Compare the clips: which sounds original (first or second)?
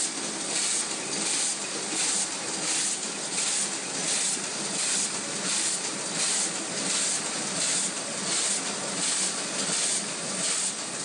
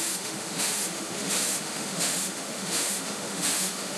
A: first